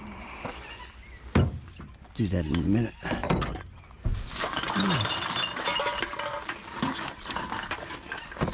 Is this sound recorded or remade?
recorded